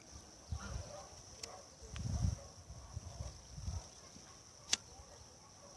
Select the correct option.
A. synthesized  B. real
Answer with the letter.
B